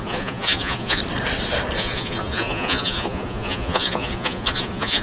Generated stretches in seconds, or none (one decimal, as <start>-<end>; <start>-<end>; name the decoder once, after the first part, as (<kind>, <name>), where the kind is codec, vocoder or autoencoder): 0.0-1.0 (vocoder, Vocos); 1.8-5.0